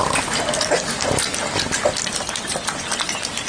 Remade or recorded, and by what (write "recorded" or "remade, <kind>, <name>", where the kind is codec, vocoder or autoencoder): recorded